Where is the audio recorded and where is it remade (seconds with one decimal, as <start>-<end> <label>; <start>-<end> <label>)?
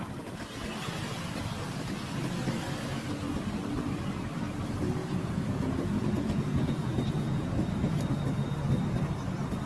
0.0-5.0 recorded; 5.0-7.5 remade; 7.5-9.7 recorded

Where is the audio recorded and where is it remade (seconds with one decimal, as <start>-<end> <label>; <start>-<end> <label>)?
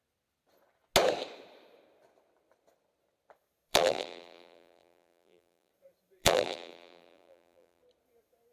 0.0-3.7 recorded; 3.7-5.7 remade; 5.7-6.2 recorded; 6.2-7.8 remade; 7.8-8.5 recorded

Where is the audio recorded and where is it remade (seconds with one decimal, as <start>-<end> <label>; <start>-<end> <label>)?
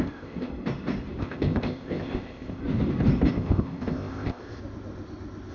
0.0-0.5 remade; 0.5-1.2 recorded; 1.2-2.6 remade; 2.6-3.3 recorded; 3.3-4.6 remade; 4.6-5.5 recorded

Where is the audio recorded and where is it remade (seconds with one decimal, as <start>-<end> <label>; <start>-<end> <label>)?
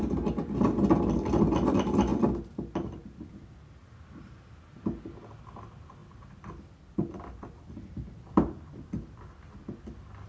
0.0-10.3 recorded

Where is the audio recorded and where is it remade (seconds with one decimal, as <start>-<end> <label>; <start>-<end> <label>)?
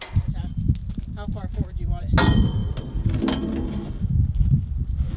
0.0-5.2 recorded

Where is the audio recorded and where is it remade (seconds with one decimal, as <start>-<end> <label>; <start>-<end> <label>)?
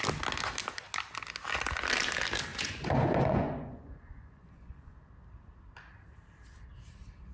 0.0-2.5 recorded; 2.5-5.1 remade; 5.1-7.3 recorded